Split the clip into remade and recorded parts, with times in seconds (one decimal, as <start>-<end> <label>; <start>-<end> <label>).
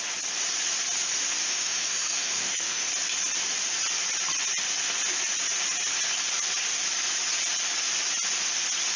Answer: 0.0-1.4 recorded; 1.4-2.9 remade; 2.9-9.0 recorded